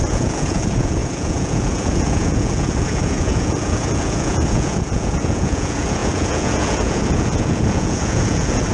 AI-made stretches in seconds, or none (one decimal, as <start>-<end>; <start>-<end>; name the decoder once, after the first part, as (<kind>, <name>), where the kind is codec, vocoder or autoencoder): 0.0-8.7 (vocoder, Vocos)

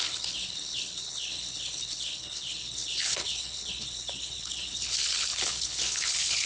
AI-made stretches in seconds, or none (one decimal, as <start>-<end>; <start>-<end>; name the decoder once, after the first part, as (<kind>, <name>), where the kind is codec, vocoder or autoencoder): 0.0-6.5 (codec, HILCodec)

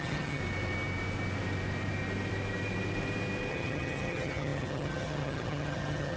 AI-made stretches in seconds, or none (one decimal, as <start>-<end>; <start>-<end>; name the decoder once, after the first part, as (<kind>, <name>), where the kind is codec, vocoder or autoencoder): 0.0-0.4 (vocoder, HiFi-GAN); 3.5-6.2

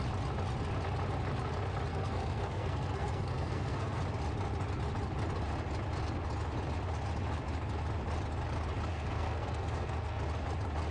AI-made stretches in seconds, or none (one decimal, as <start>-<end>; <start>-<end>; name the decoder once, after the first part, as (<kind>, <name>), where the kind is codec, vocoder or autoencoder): 1.9-4.0 (codec, SNAC); 8.9-10.2

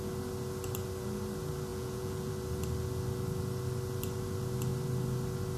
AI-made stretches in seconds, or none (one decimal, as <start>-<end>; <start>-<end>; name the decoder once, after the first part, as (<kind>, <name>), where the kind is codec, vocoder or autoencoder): 1.7-2.3 (vocoder, Vocos)

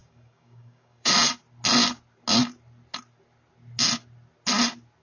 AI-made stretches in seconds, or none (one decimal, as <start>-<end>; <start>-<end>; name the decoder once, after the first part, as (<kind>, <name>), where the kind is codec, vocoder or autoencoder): 0.0-1.1 (codec, DAC)